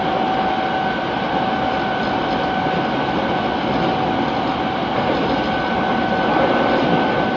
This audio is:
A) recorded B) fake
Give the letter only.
A